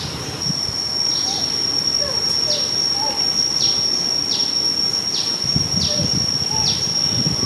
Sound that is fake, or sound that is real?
real